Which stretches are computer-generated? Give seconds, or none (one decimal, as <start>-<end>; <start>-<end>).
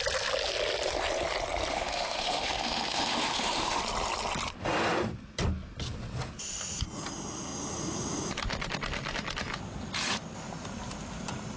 1.7-3.8